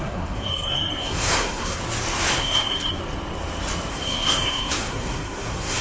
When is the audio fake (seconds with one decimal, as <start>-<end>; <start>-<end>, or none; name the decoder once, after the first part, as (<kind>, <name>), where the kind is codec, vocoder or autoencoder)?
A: 0.0-1.8 (codec, SNAC); 2.4-3.0; 3.9-5.8